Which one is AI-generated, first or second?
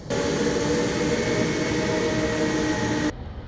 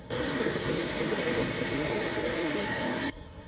second